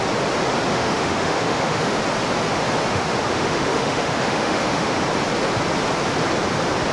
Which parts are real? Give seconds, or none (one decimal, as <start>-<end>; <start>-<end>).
0.0-0.7; 2.0-2.9; 5.0-6.9